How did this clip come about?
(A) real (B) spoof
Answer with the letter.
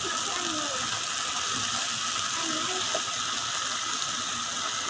A